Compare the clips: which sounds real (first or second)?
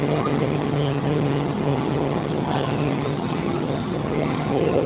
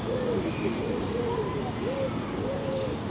second